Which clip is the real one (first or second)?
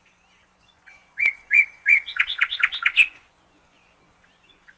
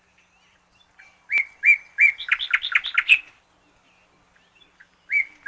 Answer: second